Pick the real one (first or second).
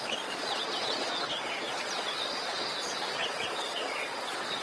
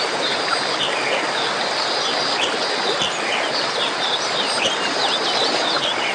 second